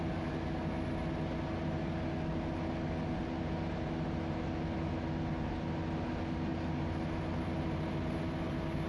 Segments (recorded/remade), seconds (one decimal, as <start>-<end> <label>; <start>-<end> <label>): 0.0-8.9 recorded